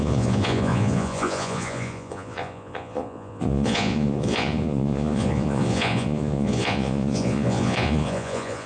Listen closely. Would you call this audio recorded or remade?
remade